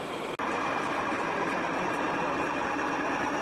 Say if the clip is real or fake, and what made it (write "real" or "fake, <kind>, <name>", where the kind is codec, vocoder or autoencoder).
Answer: fake, vocoder, BigVGAN v2